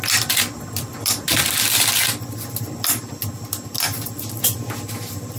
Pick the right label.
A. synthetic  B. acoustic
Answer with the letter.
B